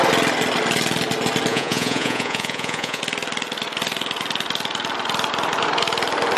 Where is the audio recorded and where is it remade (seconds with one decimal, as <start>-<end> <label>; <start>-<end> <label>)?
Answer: 0.0-1.5 recorded; 1.5-3.0 remade; 3.0-6.4 recorded